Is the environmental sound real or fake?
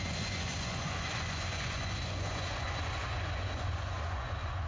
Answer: fake